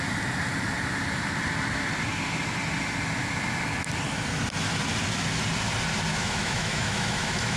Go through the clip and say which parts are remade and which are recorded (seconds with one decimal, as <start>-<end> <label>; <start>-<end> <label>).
0.0-6.1 recorded; 6.1-7.6 remade